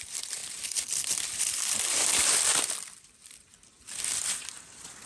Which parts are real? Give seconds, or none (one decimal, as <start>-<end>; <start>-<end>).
none